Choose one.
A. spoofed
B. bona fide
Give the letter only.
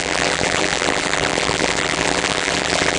A